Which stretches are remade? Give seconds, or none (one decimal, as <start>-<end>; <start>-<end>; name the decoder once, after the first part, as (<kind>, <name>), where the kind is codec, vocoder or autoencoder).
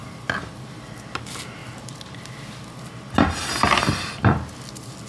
none